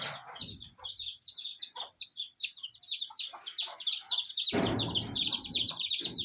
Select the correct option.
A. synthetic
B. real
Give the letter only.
B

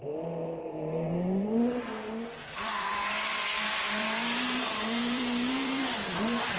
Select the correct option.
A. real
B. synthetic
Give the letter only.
B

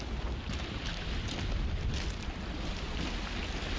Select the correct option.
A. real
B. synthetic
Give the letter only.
A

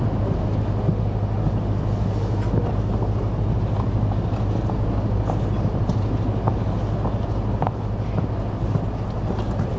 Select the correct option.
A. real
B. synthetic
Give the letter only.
A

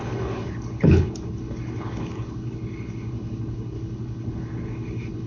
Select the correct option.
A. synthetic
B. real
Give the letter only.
A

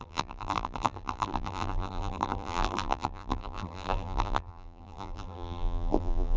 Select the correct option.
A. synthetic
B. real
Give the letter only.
A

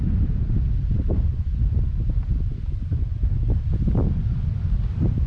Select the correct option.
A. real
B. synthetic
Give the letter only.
A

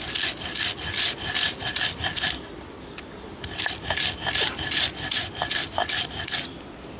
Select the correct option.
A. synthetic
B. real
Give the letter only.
B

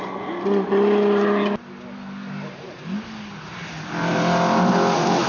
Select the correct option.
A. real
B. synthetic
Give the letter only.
A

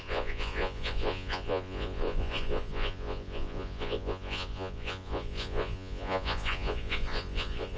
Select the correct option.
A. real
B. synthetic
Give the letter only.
B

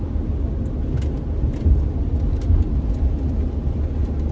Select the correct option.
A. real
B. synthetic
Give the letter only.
A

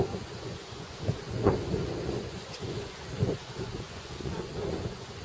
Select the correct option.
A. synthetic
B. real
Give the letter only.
A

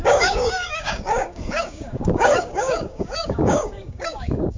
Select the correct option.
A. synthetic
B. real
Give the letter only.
A